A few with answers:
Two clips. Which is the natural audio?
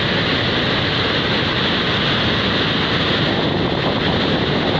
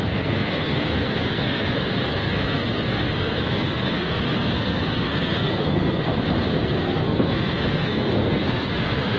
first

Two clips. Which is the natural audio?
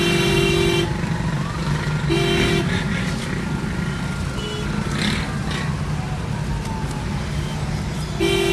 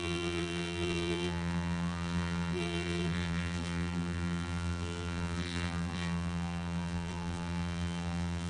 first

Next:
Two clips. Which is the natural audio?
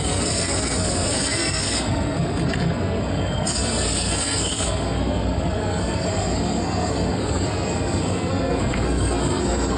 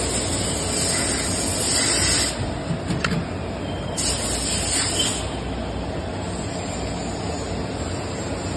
second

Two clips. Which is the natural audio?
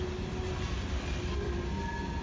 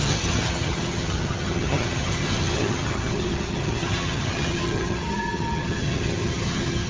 first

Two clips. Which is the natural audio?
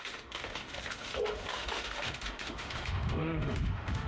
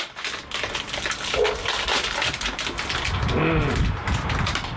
second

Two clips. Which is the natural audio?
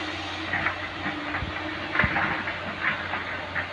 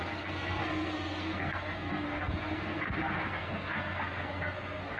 first